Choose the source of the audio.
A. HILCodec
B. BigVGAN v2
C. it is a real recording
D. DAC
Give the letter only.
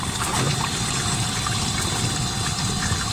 C